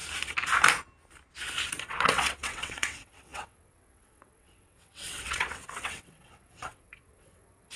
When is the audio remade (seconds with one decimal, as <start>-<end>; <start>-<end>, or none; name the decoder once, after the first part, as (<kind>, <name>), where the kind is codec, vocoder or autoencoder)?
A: 1.8-7.8 (vocoder, WaveNeXt)